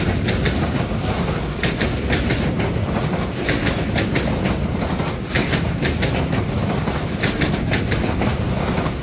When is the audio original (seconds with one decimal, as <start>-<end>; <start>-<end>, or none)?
0.0-9.0